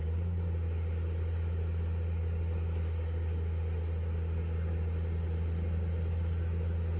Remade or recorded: recorded